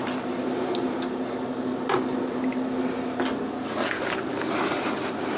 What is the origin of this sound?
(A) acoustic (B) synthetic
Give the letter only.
A